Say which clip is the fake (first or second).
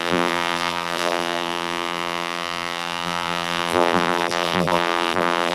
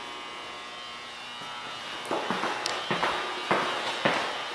first